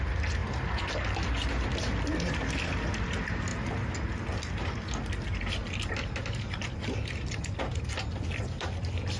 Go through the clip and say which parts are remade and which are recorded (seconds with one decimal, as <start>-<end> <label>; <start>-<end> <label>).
0.0-9.2 recorded